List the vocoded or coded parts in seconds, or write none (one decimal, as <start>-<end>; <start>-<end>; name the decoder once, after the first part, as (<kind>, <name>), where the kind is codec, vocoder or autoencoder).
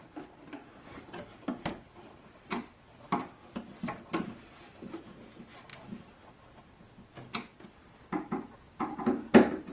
none